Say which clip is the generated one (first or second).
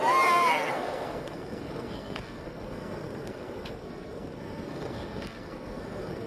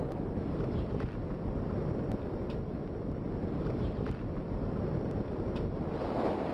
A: first